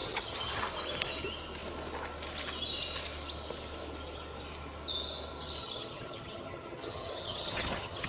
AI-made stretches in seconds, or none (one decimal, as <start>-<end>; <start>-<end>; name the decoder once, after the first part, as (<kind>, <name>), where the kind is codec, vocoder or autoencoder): 0.0-0.6 (vocoder, HiFi-GAN); 5.6-8.1